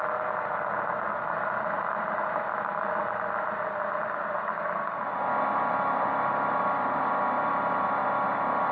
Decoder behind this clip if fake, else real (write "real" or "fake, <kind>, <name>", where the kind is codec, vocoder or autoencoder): real